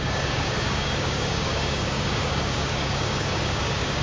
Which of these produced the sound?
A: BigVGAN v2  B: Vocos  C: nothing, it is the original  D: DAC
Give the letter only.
D